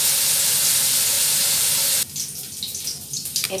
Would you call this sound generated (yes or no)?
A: no